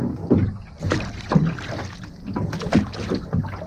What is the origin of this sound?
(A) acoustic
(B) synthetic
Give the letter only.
A